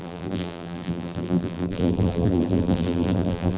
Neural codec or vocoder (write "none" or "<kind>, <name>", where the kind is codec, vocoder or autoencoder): vocoder, BigVGAN v2